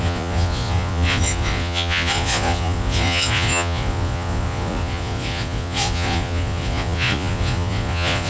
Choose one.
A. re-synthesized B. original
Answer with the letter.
A